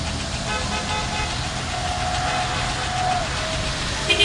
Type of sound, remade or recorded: recorded